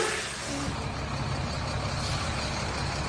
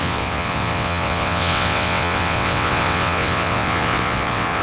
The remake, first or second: second